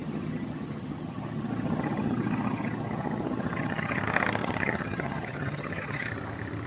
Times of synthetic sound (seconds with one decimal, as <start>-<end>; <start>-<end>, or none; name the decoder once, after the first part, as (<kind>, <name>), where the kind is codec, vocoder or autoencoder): 0.0-4.0 (vocoder, HiFi-GAN); 4.4-6.1